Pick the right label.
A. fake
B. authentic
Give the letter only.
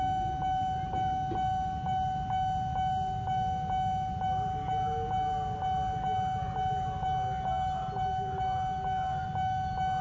B